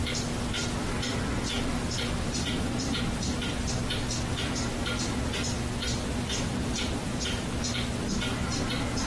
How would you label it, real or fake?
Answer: real